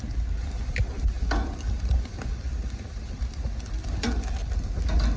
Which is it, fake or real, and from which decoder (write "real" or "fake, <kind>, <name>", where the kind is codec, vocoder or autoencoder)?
real